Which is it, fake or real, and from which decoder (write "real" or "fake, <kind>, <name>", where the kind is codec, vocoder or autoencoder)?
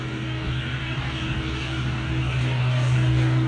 fake, codec, DAC